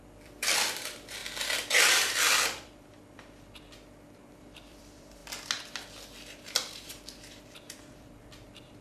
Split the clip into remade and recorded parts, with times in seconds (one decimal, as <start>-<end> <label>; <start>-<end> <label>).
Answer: 0.0-1.2 remade; 1.2-1.7 recorded; 1.7-5.2 remade; 5.2-6.4 recorded; 6.4-8.8 remade